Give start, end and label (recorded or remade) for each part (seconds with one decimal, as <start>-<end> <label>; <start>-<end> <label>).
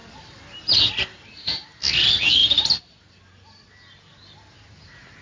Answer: 0.0-2.4 recorded; 2.4-3.0 remade; 3.0-5.2 recorded